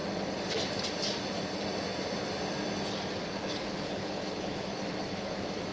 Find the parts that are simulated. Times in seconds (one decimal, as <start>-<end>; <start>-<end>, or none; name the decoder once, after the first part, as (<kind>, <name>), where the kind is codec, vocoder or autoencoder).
3.4-5.7 (autoencoder, DAC-VAE)